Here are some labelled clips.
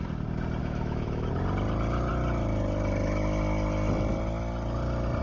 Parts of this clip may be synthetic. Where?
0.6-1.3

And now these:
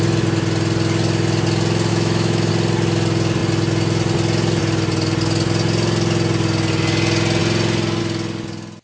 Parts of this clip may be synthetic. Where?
1.9-2.5

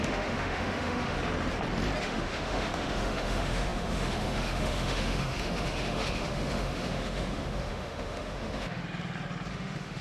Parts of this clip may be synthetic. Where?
0.0-1.2; 2.0-8.8; 9.5-10.0

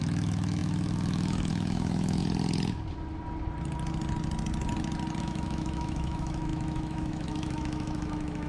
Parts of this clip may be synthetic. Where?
0.0-2.2; 5.2-8.5

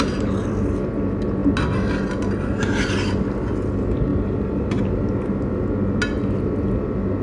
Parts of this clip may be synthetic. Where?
none